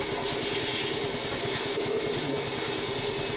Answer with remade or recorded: recorded